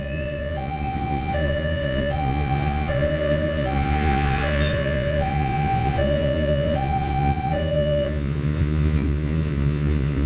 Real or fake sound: fake